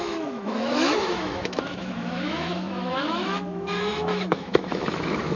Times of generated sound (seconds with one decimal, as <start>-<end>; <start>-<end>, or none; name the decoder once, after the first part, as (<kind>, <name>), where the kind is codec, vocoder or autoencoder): 0.0-5.4 (autoencoder, DAC-VAE)